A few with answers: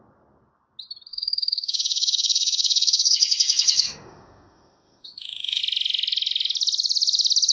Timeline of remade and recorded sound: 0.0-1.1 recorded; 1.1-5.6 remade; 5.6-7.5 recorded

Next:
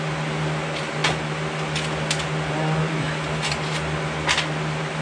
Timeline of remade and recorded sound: 0.0-5.0 recorded

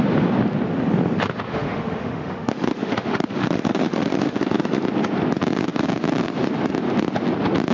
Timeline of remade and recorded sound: 0.0-1.5 recorded; 1.5-4.8 remade; 4.8-7.7 recorded

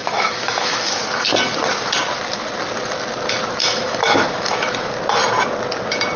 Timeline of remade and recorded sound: 0.0-1.0 remade; 1.0-3.6 recorded; 3.6-4.9 remade; 4.9-6.2 recorded